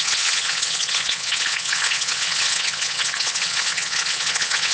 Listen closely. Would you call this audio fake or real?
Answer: fake